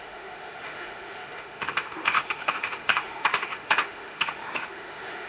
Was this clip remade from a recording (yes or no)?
yes